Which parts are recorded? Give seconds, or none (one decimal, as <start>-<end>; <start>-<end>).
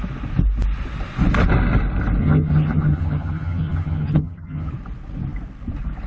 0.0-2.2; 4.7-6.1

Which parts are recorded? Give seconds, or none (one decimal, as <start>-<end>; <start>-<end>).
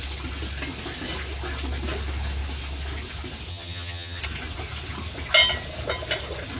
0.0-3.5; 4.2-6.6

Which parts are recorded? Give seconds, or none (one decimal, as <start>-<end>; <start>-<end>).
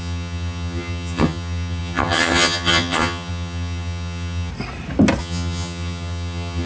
4.5-5.2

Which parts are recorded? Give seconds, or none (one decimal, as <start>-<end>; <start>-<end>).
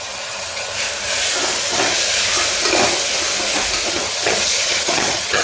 0.7-3.9